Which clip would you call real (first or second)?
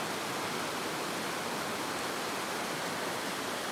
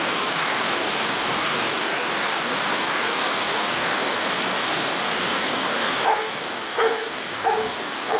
first